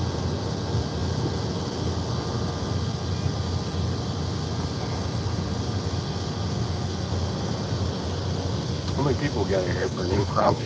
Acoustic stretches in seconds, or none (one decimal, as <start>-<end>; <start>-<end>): 0.0-9.8